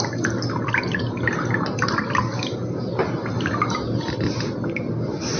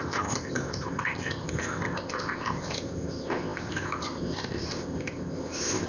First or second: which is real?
first